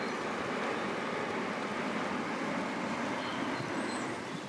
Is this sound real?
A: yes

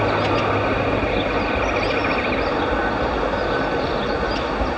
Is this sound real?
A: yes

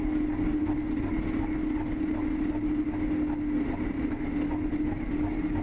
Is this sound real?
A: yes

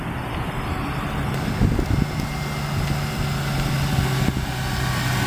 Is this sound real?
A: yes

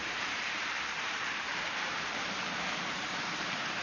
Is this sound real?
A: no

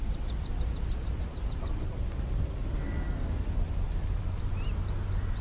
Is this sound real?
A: yes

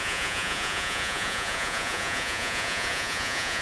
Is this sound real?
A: no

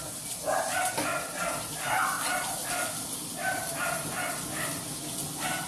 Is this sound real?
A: yes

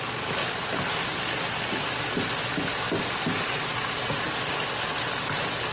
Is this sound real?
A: yes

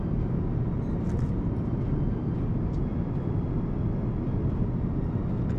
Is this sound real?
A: yes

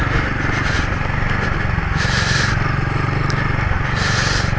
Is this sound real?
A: yes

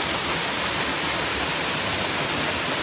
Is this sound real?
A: yes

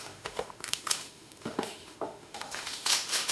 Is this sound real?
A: no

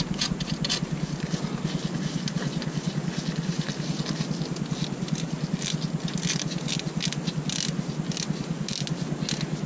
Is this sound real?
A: yes